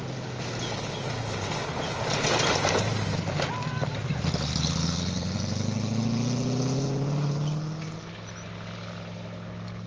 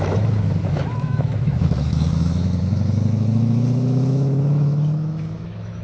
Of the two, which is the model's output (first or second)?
second